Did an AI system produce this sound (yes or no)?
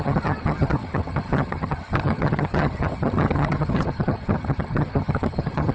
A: yes